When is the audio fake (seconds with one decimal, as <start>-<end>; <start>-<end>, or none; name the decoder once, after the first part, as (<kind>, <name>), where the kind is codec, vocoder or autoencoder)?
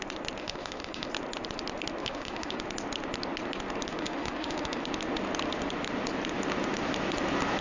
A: 0.4-1.1 (autoencoder, DAC-VAE); 2.0-2.6; 3.9-4.8